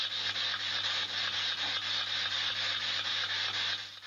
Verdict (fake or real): real